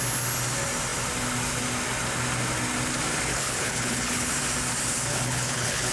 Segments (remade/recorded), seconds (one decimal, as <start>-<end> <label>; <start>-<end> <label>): 0.0-3.3 recorded; 3.3-4.3 remade; 4.3-5.1 recorded; 5.1-5.9 remade